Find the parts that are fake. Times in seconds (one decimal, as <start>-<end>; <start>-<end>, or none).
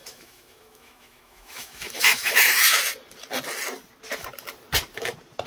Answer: 0.0-2.8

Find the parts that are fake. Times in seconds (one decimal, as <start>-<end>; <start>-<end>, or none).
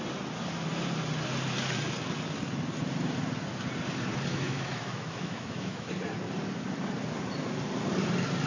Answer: 4.3-5.9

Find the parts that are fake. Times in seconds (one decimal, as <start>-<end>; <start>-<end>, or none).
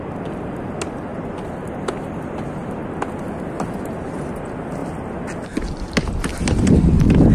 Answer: none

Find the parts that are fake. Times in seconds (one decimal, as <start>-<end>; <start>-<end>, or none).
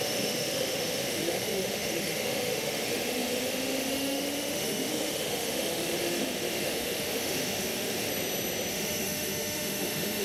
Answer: 0.0-8.1; 8.7-10.2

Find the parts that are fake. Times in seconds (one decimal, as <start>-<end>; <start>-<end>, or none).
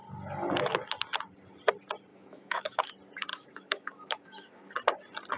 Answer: 2.1-2.9; 3.3-4.7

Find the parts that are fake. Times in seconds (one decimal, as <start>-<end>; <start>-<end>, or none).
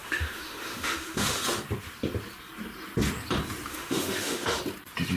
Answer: 0.0-1.4; 3.7-4.6